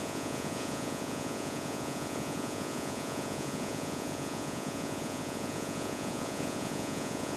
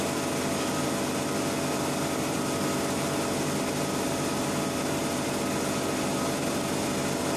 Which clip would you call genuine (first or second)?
second